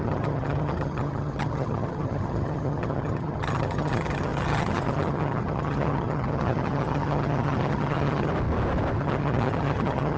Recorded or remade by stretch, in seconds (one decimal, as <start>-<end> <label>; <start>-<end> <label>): 0.0-8.3 remade; 8.3-9.0 recorded; 9.0-10.2 remade